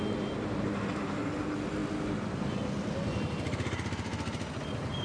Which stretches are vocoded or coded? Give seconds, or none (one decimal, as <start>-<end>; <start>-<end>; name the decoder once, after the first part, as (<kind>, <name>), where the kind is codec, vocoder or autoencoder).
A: none